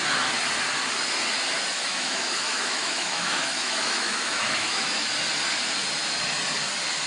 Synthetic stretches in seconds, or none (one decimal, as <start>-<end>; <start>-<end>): 1.8-5.1